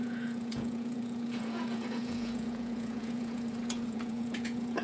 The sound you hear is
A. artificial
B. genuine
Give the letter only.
A